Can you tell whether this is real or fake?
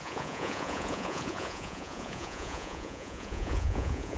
fake